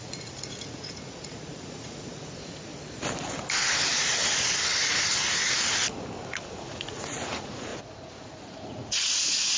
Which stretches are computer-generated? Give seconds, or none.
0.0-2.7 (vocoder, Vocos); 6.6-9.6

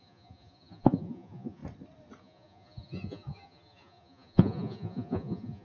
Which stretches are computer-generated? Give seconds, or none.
0.0-1.6 (vocoder, Vocos); 2.2-5.6

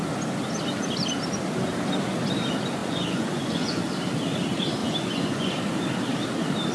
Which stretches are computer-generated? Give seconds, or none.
2.8-3.8 (vocoder, Vocos); 4.8-5.5